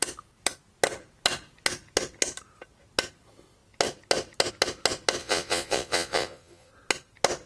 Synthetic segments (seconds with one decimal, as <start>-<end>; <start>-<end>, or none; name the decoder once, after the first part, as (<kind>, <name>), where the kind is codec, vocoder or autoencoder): 5.2-6.7 (vocoder, Vocos)